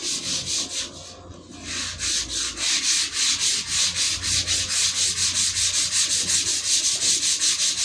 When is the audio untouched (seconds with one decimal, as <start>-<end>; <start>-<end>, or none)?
0.0-7.8